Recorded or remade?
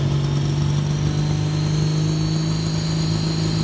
recorded